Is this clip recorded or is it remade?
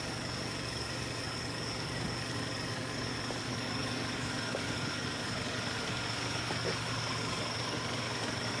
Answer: remade